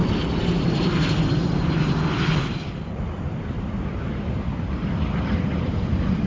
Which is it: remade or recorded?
remade